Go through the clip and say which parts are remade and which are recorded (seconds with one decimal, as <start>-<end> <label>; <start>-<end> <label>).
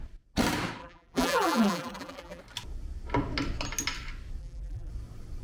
0.0-0.8 recorded; 0.8-2.4 remade; 2.4-4.4 recorded; 4.4-4.9 remade; 4.9-5.4 recorded